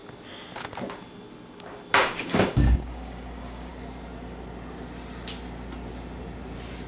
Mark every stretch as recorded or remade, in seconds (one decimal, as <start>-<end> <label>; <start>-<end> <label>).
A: 0.0-2.0 recorded; 2.0-3.7 remade; 3.7-6.9 recorded